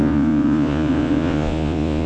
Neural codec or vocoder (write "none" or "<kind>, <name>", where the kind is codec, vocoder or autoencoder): vocoder, Vocos